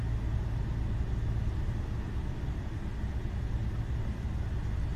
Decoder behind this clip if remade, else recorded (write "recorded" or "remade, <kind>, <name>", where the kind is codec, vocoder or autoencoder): recorded